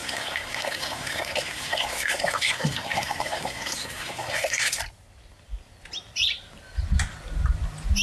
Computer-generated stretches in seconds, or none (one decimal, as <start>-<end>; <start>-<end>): 0.0-4.8